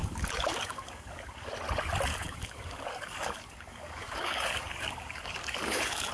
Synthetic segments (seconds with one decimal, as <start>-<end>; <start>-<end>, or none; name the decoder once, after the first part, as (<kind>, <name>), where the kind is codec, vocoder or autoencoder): 0.0-1.5 (codec, DAC); 2.1-6.1

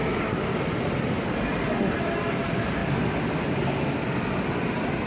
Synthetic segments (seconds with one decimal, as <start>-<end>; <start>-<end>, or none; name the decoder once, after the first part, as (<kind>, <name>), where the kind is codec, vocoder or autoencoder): 0.0-0.6 (codec, DAC)

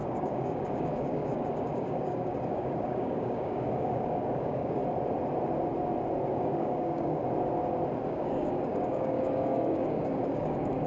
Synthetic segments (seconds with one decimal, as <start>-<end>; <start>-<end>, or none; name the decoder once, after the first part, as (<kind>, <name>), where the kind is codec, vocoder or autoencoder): 0.0-4.8 (codec, DAC); 6.4-7.2; 8.1-10.9

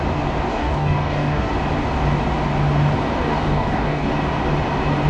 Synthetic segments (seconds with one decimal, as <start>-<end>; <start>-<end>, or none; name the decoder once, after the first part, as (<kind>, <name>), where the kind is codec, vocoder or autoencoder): 0.5-1.5 (codec, DAC); 3.3-4.1

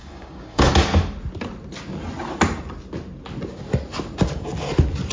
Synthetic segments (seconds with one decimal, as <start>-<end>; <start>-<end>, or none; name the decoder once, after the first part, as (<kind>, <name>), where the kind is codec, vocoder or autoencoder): 0.0-0.7 (codec, DAC)

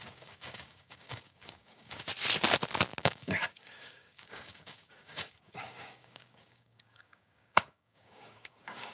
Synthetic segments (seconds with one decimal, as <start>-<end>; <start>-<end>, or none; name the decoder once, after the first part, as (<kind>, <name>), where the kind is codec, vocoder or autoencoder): 0.0-2.1 (codec, DAC); 3.0-8.9